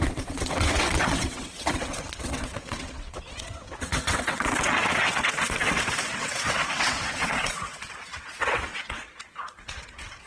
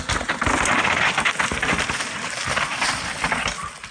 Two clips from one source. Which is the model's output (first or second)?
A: first